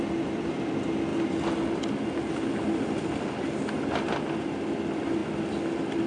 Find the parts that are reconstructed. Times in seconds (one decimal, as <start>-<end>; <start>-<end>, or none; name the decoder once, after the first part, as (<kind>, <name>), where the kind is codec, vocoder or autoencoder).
none